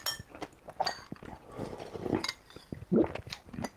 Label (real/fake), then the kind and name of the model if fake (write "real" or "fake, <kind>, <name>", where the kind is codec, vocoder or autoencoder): real